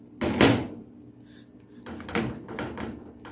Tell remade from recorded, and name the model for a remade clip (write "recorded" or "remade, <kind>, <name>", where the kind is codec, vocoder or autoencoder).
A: recorded